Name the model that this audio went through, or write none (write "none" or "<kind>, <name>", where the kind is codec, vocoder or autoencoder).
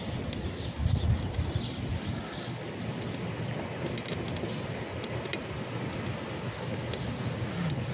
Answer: none